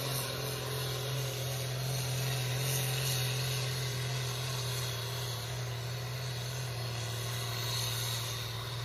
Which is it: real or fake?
real